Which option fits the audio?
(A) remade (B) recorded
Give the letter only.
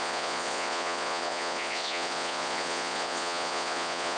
A